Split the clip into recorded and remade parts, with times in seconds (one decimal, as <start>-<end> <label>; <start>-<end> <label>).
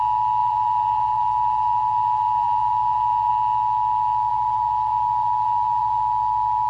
0.0-0.4 recorded; 0.4-3.3 remade; 3.3-4.3 recorded; 4.3-6.0 remade; 6.0-6.7 recorded